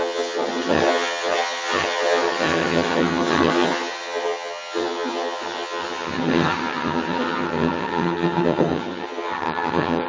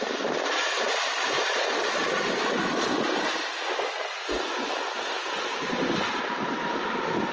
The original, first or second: second